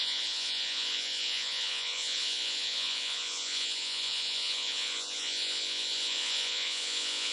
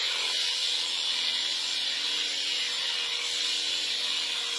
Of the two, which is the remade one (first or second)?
first